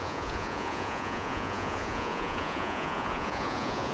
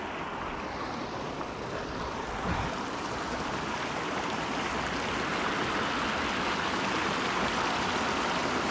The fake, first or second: first